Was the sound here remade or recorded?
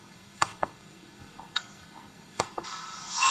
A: remade